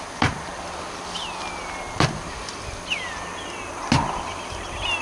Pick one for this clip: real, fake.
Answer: real